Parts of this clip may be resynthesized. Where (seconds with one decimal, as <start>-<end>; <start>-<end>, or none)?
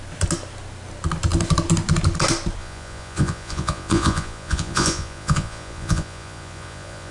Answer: 2.6-7.1